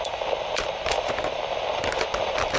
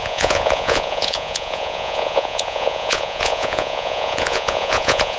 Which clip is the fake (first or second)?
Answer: second